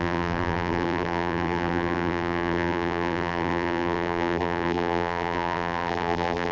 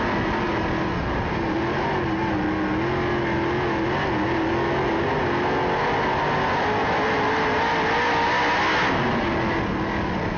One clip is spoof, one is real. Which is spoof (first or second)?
first